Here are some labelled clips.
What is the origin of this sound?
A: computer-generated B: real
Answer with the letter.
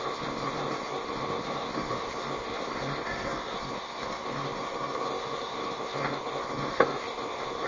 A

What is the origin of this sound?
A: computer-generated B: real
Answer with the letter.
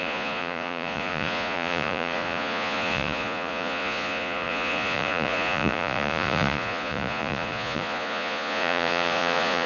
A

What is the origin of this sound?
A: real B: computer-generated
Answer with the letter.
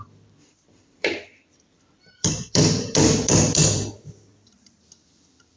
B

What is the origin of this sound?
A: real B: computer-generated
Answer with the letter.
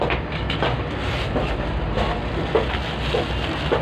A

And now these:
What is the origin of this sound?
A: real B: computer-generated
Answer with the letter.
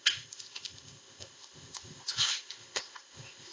B